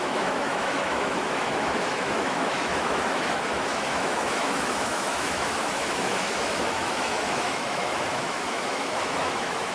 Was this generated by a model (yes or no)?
yes